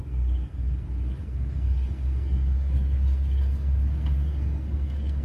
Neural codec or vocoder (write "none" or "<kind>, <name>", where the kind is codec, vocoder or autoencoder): codec, SNAC